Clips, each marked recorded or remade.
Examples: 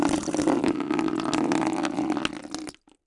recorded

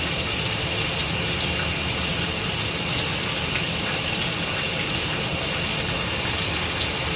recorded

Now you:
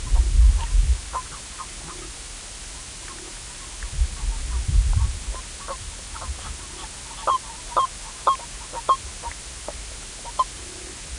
recorded